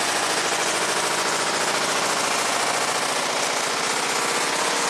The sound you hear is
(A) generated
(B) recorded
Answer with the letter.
A